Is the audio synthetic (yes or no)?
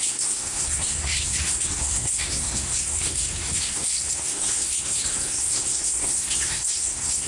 yes